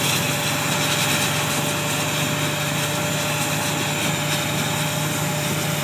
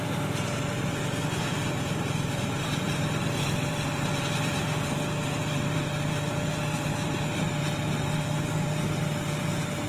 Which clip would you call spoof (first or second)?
second